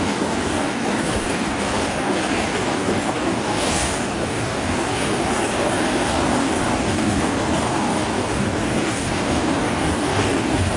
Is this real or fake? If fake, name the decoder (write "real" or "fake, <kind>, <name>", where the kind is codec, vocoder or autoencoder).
fake, codec, DAC